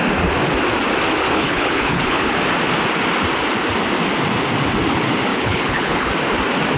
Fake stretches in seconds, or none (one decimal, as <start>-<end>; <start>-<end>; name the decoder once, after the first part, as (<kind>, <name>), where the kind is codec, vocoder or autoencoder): 1.2-2.4 (codec, HILCodec); 5.3-6.1